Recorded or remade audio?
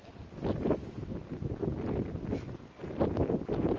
recorded